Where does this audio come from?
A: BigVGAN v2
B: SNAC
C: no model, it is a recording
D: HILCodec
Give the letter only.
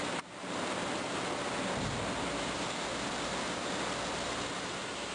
C